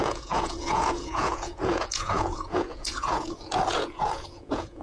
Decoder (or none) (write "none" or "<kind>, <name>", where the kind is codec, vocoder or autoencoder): vocoder, Vocos